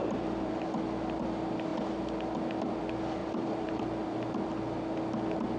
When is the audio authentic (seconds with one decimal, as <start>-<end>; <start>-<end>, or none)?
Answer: 0.6-3.2; 3.8-5.6